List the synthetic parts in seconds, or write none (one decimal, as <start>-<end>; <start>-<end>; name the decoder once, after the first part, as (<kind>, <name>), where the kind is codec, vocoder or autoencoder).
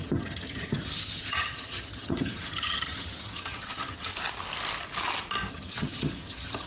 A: 0.0-4.1 (vocoder, HiFi-GAN); 5.5-6.7